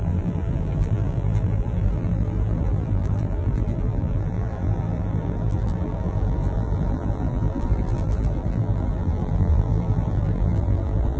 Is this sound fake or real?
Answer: fake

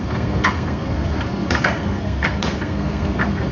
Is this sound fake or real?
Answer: fake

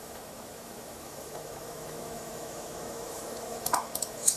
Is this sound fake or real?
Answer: fake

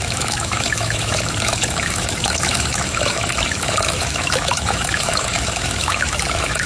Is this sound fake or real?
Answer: fake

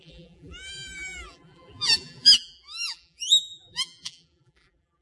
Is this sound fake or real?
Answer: fake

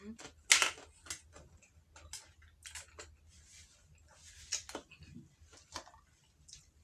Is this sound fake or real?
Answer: real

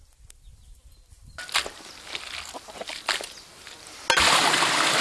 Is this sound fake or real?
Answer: real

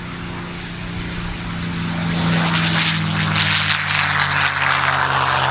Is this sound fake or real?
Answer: real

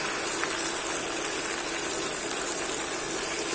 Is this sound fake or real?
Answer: fake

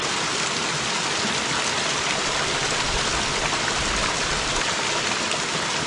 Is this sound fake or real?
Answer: real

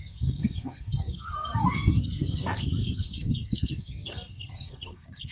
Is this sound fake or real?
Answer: fake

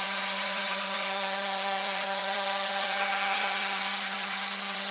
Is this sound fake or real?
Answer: fake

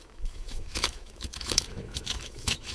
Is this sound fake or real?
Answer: fake